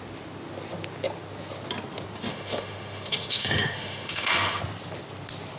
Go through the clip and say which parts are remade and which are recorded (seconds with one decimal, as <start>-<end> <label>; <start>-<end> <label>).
0.0-2.3 recorded; 2.3-4.6 remade; 4.6-5.6 recorded